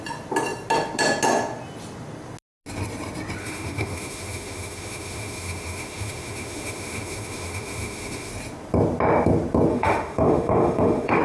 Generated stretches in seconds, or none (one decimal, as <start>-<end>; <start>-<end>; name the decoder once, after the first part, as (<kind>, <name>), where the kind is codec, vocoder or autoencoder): 3.4-8.3 (autoencoder, DAC-VAE); 9.7-11.2